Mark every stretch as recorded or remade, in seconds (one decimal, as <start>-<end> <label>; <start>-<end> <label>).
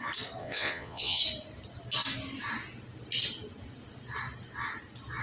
0.0-0.4 recorded; 0.4-1.2 remade; 1.2-5.2 recorded